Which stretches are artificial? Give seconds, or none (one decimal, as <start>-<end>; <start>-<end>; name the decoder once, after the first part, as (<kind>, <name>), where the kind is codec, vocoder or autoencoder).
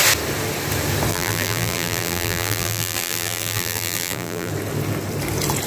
1.1-4.5 (vocoder, BigVGAN v2)